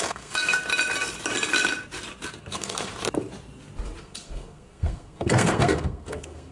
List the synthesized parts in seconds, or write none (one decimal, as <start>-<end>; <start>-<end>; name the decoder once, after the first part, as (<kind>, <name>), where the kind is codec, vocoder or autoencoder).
0.0-0.7 (codec, SNAC); 2.4-2.9; 4.0-6.5